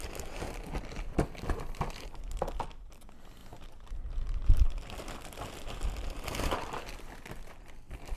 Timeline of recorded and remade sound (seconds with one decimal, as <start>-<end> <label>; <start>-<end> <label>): 0.0-3.4 recorded; 3.4-3.9 remade; 3.9-8.2 recorded